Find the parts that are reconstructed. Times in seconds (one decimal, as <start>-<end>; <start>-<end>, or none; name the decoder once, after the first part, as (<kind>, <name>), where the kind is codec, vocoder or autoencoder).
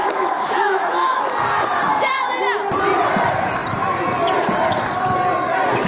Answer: 0.0-1.2 (autoencoder, DAC-VAE)